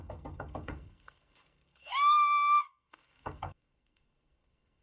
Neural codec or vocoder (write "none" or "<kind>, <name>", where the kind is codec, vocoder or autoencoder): codec, SNAC